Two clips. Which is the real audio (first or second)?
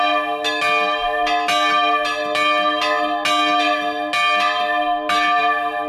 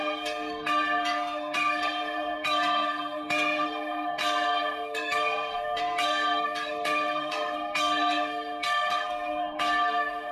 first